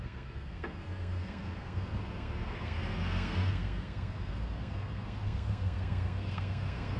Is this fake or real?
fake